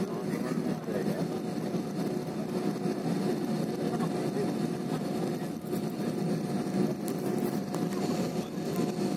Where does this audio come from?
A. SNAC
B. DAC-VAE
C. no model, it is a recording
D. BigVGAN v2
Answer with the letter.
C